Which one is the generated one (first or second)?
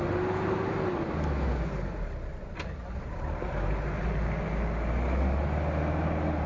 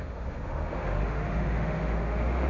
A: second